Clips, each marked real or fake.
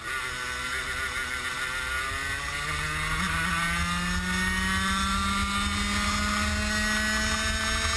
real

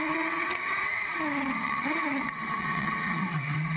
fake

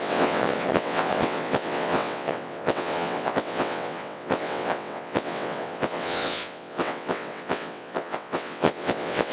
fake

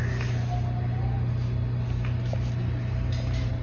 real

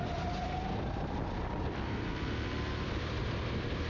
real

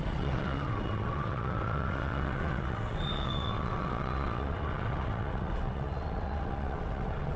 fake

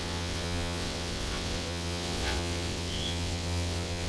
fake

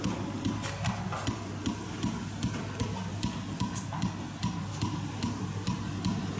real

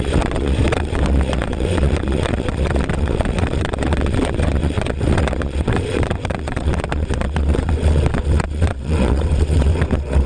fake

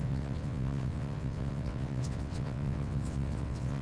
fake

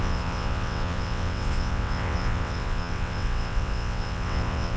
fake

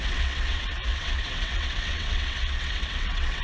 fake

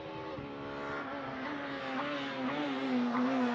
real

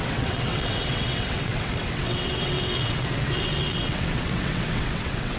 fake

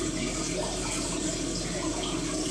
real